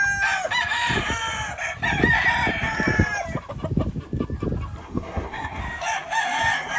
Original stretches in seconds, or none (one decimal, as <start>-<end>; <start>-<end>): 0.0-4.8; 5.6-6.8